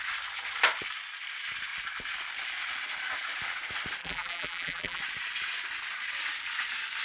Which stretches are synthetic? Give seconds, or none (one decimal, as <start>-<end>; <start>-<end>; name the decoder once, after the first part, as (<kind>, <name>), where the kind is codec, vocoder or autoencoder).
4.0-5.0 (vocoder, BigVGAN v2)